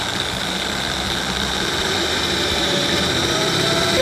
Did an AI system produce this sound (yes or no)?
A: yes